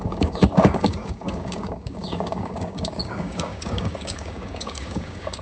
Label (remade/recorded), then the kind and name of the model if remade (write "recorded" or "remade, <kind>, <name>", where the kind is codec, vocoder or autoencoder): remade, codec, DAC